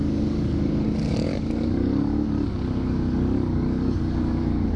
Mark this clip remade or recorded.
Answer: remade